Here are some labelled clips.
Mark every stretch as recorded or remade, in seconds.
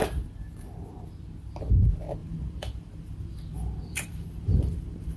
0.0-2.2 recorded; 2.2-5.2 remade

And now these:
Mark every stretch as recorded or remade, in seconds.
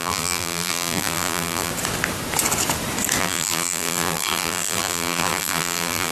0.0-1.7 remade; 1.7-3.2 recorded; 3.2-6.1 remade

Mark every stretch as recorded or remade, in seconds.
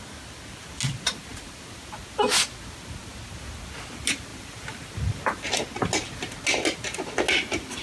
0.0-4.3 recorded; 4.3-5.2 remade; 5.2-7.8 recorded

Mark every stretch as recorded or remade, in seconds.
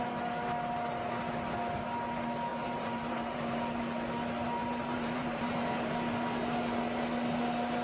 0.0-2.5 recorded; 2.5-3.8 remade; 3.8-4.6 recorded; 4.6-5.9 remade; 5.9-7.8 recorded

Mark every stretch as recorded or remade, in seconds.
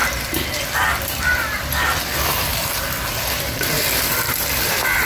0.0-0.5 recorded; 0.5-2.5 remade; 2.5-3.3 recorded; 3.3-5.1 remade